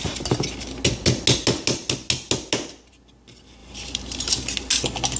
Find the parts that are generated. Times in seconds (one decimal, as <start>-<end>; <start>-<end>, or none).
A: 3.6-4.3